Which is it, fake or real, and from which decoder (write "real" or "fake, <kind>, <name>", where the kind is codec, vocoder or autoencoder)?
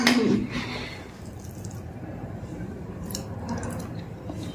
real